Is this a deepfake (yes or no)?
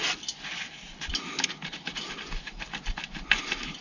no